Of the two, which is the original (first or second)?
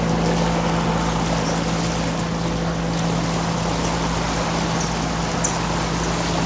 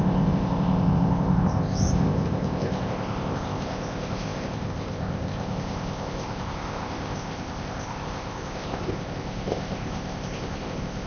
first